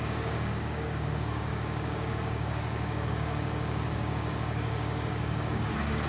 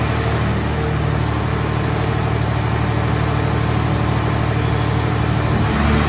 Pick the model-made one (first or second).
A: first